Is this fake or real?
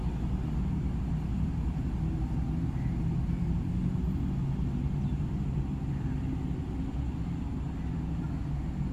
real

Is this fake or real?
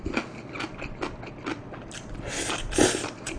real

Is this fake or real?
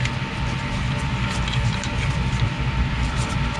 fake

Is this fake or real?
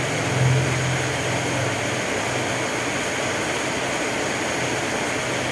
real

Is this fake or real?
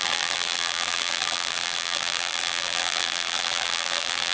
fake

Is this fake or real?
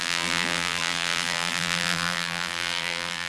fake